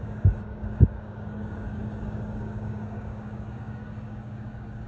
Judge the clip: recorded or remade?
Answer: remade